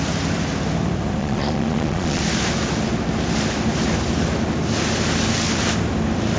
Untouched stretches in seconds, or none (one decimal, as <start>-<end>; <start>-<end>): 0.0-1.2; 2.2-6.4